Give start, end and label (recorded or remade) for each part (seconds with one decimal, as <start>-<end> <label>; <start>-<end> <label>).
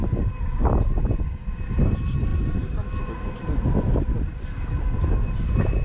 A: 0.0-0.7 remade; 0.7-5.8 recorded